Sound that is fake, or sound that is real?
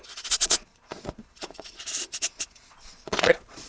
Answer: fake